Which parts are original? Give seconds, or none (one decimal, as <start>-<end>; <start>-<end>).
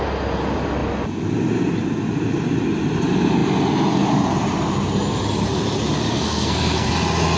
0.0-6.1; 6.9-7.4